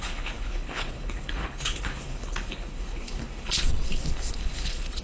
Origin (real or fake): fake